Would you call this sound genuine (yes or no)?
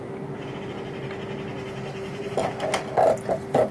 yes